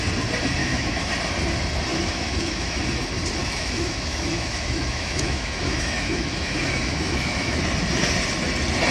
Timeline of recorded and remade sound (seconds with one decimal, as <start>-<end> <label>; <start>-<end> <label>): 0.0-0.6 recorded; 0.6-1.1 remade; 1.1-1.9 recorded; 1.9-2.8 remade; 2.8-3.4 recorded; 3.4-7.6 remade; 7.6-8.9 recorded